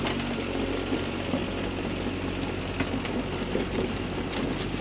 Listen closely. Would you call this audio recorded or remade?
recorded